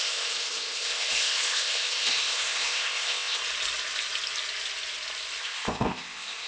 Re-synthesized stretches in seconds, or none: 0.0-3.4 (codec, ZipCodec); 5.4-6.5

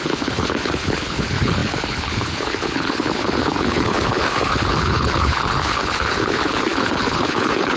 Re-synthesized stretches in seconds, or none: 0.0-7.8 (codec, HILCodec)

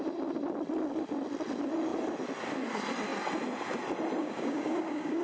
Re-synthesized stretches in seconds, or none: 4.2-5.2 (codec, DAC)

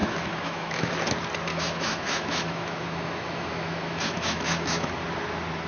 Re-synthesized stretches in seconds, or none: 0.0-0.9 (autoencoder, DAC-VAE); 1.5-4.9

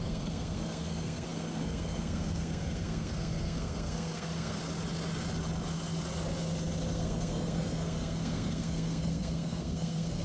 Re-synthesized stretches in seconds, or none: 0.0-4.6 (codec, SNAC); 6.9-10.2

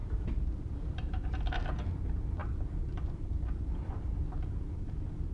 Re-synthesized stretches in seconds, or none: 0.0-1.3 (vocoder, BigVGAN v2); 2.4-3.9